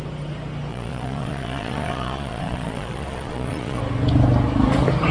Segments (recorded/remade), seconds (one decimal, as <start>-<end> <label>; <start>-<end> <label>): 0.0-0.7 recorded; 0.7-3.8 remade; 3.8-5.1 recorded